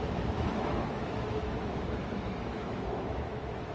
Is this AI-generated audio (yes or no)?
yes